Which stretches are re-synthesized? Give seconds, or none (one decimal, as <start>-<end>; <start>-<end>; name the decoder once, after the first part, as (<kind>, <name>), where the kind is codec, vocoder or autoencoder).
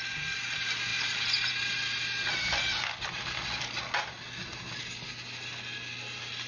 none